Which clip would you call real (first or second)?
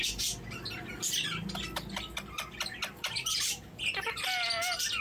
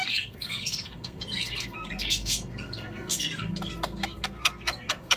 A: first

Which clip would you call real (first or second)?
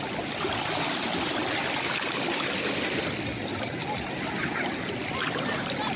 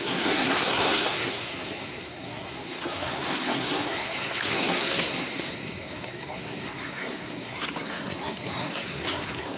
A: first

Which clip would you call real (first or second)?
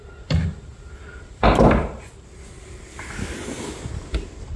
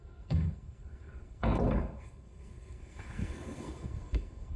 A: first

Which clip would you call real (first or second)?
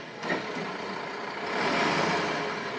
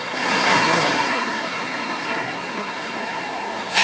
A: first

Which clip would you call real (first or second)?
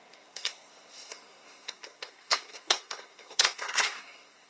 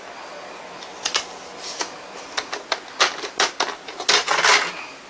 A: second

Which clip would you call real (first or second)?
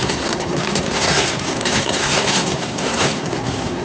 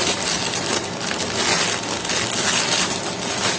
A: second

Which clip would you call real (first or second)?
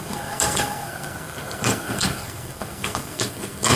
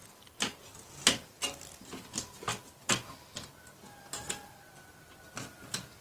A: second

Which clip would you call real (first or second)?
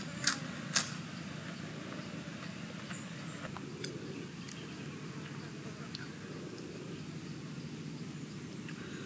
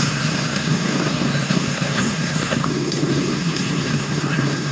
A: first